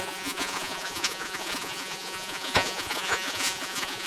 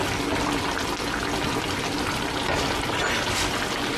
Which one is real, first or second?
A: second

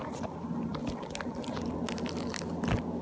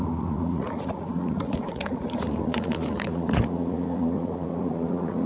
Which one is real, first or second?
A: first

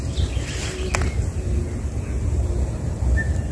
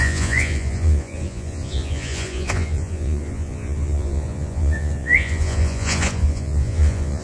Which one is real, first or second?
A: first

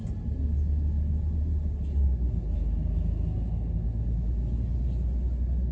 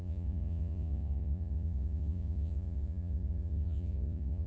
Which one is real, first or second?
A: first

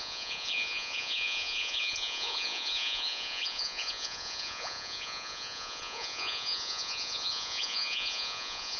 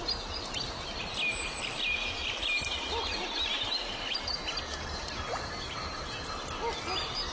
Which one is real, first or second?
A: second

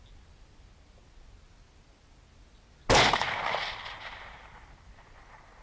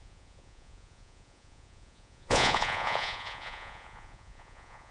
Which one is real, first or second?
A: first